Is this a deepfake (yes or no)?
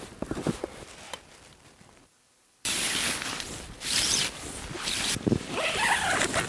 yes